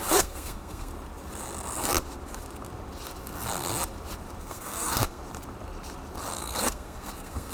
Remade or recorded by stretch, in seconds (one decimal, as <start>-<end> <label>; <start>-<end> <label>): 0.0-0.9 remade; 0.9-4.4 recorded; 4.4-5.2 remade; 5.2-6.4 recorded; 6.4-7.5 remade